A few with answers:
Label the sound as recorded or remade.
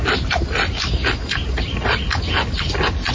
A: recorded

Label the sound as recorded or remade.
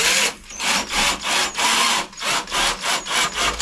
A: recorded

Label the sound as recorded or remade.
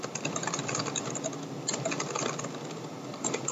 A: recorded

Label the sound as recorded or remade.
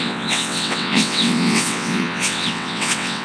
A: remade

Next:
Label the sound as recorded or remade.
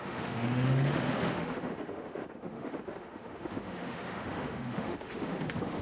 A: remade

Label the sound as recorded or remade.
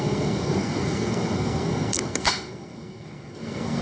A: remade